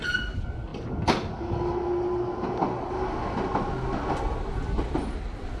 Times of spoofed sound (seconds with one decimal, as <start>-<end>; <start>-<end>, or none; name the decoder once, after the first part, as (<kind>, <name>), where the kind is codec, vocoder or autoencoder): none